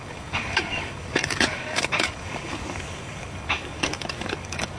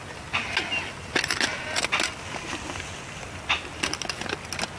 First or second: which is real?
second